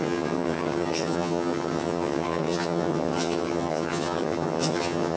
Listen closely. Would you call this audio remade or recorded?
remade